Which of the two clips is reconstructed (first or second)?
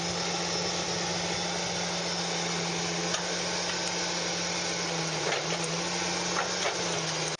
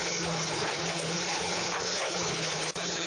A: second